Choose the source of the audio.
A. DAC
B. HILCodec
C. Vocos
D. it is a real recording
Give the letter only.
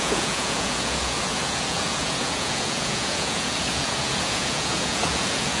C